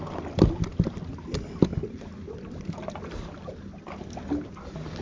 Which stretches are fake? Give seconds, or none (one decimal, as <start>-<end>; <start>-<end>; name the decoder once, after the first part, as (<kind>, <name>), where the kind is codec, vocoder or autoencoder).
none